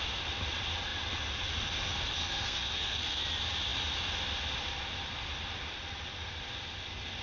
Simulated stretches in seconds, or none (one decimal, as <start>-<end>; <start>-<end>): 2.2-3.2